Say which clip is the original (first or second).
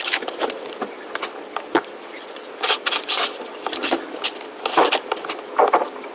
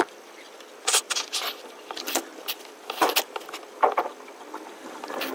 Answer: second